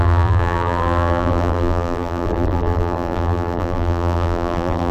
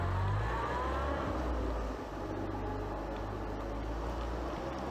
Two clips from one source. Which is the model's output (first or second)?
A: first